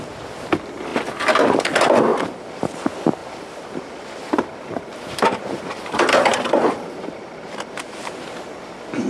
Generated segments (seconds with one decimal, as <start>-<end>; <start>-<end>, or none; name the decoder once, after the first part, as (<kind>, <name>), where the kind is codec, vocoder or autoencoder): 2.1-2.7 (vocoder, BigVGAN v2); 3.2-8.1